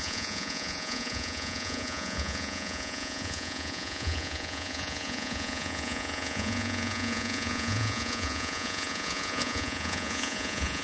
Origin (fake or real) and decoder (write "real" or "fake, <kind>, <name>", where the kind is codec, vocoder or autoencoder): fake, vocoder, Vocos